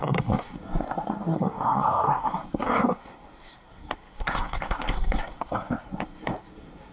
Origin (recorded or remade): remade